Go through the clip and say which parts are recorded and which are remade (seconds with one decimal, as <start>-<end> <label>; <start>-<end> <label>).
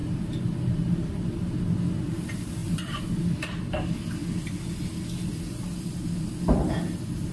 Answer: 0.0-2.2 remade; 2.2-2.6 recorded; 2.6-3.2 remade; 3.2-7.3 recorded